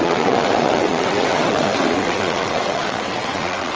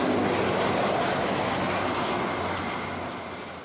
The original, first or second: second